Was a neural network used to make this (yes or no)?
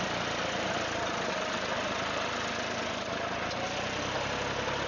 no